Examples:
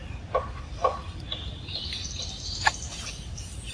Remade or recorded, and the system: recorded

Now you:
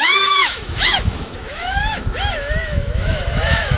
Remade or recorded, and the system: remade, autoencoder, DAC-VAE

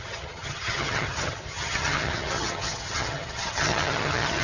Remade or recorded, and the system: remade, vocoder, HiFi-GAN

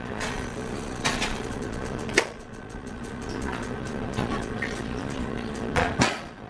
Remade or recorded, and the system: remade, vocoder, Vocos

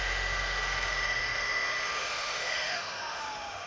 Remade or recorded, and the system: remade, autoencoder, DAC-VAE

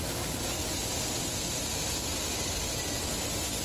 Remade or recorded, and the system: recorded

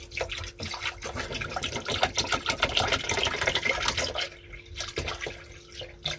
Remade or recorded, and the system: recorded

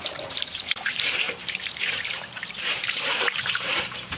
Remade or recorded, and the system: remade, vocoder, BigVGAN v2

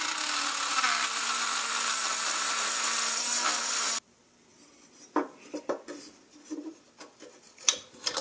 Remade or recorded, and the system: recorded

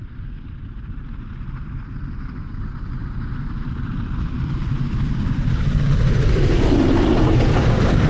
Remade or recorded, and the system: remade, vocoder, BigVGAN v2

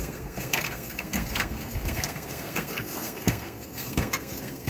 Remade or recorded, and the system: remade, codec, SNAC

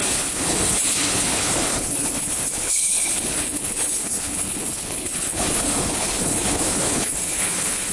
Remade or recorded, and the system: remade, codec, HILCodec